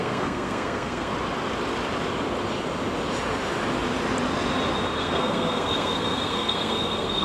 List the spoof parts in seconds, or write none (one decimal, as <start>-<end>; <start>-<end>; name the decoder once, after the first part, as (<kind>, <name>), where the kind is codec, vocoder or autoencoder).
0.0-1.1 (codec, SNAC); 5.0-7.2